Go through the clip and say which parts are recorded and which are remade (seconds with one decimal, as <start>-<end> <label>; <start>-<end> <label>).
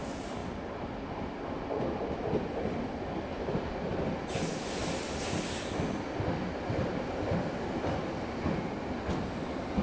0.0-9.8 recorded